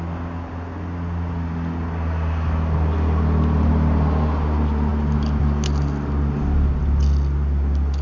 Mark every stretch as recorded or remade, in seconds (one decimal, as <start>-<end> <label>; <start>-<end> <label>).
0.0-4.9 recorded; 4.9-5.4 remade; 5.4-8.0 recorded